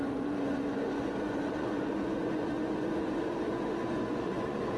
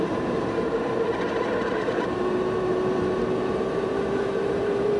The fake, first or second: first